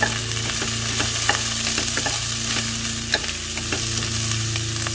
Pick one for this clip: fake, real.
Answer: real